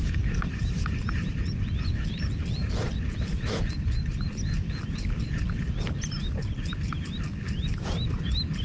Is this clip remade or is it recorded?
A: recorded